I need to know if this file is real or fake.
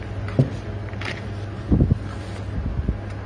real